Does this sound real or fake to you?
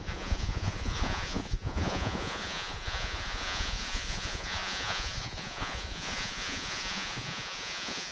fake